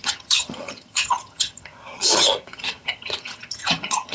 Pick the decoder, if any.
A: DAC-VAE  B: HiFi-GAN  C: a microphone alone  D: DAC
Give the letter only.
B